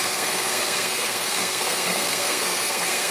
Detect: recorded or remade remade